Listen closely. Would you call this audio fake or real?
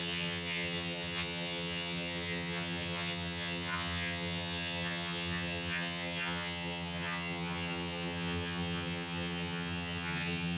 fake